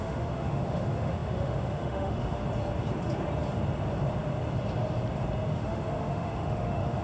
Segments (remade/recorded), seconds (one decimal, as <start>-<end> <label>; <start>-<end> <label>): 0.0-2.4 remade; 2.4-5.5 recorded; 5.5-7.0 remade